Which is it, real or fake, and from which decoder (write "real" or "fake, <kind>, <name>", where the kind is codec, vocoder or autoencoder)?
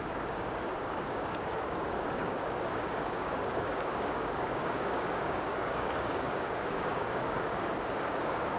fake, codec, DAC